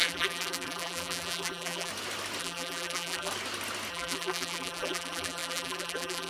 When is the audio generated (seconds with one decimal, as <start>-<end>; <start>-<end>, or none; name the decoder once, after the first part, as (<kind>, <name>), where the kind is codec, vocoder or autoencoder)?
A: 0.0-1.9 (vocoder, BigVGAN v2); 2.4-3.3; 3.9-6.3